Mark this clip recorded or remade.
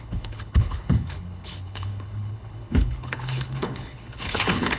remade